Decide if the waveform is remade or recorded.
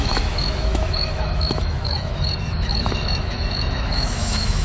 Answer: remade